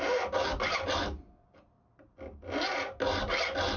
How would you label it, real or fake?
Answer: real